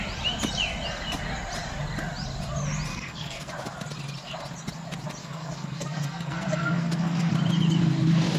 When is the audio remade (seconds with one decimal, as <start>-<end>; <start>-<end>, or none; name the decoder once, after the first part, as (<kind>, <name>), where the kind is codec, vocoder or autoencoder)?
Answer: 2.9-3.5 (codec, SNAC); 5.2-7.3